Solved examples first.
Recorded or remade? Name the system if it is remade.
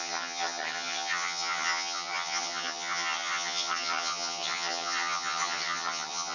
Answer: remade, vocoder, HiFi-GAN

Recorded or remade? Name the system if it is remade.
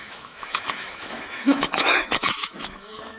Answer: remade, autoencoder, DAC-VAE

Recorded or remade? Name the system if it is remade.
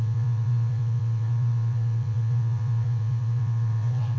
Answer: remade, vocoder, WaveNeXt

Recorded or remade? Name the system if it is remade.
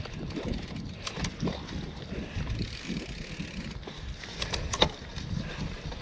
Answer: recorded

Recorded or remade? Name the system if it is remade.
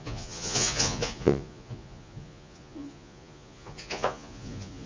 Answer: remade, vocoder, Vocos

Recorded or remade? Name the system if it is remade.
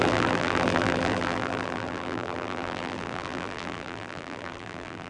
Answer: remade, vocoder, BigVGAN v2